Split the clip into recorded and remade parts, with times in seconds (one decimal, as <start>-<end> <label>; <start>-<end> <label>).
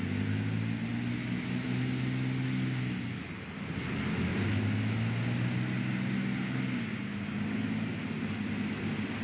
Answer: 0.0-9.2 recorded